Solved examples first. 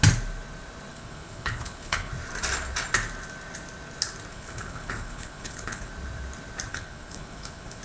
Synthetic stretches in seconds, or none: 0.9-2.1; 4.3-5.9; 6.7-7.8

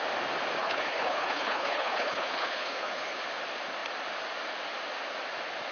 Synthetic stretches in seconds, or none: 0.6-3.2